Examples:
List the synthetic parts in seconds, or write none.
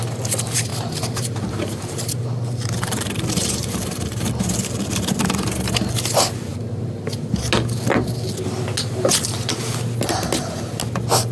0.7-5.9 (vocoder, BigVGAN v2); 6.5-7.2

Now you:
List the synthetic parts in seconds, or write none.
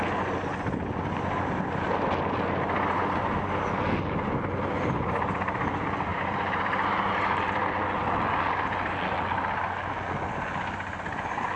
6.1-7.4 (vocoder, BigVGAN v2)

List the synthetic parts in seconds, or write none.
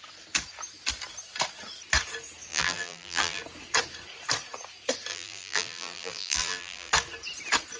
2.5-3.4 (vocoder, BigVGAN v2); 5.1-6.9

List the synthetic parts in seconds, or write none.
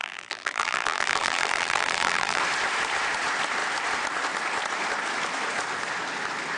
0.0-2.4 (vocoder, BigVGAN v2)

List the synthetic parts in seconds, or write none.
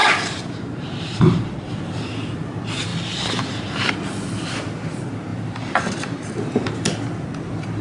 0.0-1.7 (vocoder, BigVGAN v2); 2.9-3.9; 5.3-6.7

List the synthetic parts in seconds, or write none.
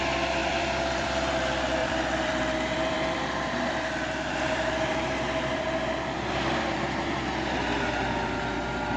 0.4-1.3 (vocoder, BigVGAN v2); 1.8-6.9